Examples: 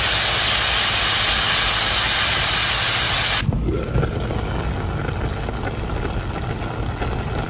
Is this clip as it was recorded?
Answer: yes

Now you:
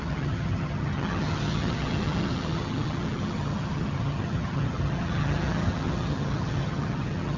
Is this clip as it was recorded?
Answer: no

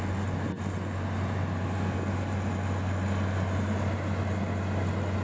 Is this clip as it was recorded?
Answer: yes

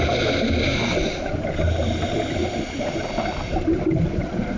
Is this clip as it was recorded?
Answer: yes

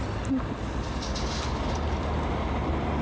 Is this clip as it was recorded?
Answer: yes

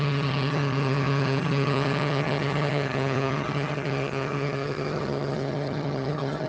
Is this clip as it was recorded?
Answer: no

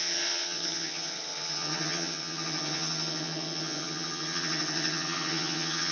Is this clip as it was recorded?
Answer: no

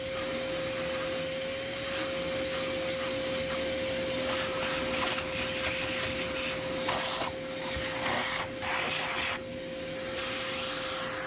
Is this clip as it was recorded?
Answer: yes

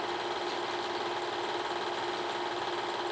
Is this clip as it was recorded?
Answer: yes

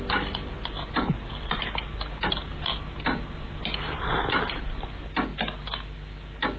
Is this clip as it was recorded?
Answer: yes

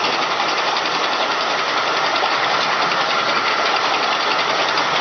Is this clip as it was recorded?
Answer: yes